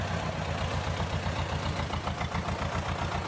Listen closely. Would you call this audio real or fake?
real